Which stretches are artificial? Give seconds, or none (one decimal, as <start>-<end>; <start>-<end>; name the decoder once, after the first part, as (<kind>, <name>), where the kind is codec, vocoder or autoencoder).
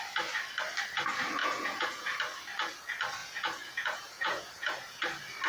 1.4-2.2 (vocoder, Vocos); 3.2-5.0